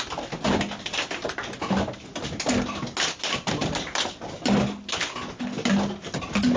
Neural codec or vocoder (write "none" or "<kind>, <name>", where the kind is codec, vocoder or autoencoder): none